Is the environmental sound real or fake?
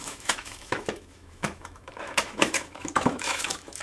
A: fake